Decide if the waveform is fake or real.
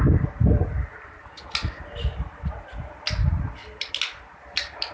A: real